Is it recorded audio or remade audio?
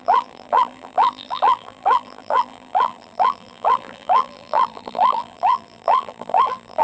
remade